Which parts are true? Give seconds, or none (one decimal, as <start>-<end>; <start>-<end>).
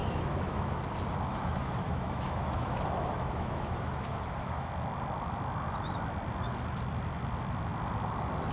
0.8-1.3; 4.7-8.5